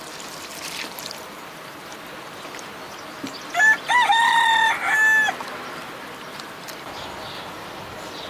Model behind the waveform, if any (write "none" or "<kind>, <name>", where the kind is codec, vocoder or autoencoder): none